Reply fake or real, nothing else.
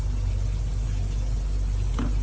real